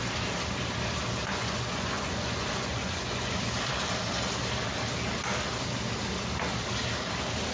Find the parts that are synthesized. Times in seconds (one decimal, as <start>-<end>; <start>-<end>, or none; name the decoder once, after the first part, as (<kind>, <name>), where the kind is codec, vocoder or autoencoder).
1.3-3.3 (vocoder, Vocos)